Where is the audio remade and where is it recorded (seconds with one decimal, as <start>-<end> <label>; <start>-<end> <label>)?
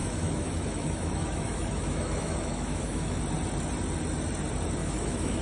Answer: 0.0-3.2 remade; 3.2-4.8 recorded; 4.8-5.4 remade